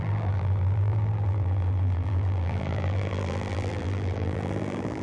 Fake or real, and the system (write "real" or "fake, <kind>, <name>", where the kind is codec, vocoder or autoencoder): fake, vocoder, BigVGAN v2